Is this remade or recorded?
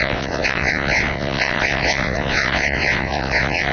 remade